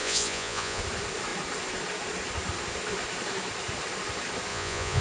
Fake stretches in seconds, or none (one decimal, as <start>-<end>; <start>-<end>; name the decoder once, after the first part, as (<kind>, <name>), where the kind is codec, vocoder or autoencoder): 0.0-0.8 (vocoder, Vocos); 4.5-5.0